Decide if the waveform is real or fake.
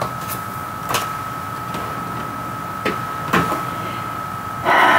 real